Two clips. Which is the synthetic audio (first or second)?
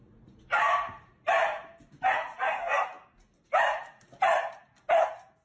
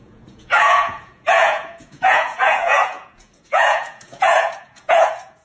second